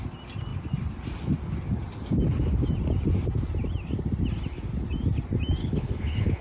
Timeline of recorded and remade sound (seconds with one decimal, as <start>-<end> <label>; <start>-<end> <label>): 0.0-5.6 recorded; 5.6-6.4 remade